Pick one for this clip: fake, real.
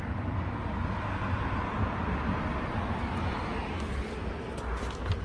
fake